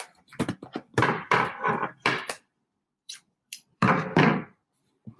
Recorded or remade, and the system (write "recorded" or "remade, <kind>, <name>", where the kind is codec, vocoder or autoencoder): remade, vocoder, BigVGAN v2